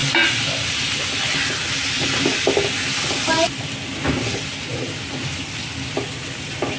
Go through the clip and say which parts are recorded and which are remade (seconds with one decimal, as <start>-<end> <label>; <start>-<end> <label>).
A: 0.0-6.8 recorded